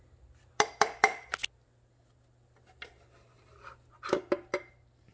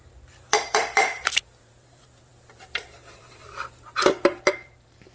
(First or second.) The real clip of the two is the first